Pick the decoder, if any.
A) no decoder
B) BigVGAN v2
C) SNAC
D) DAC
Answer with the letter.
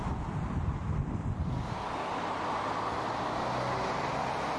B